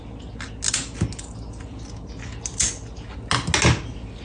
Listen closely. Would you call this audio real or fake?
real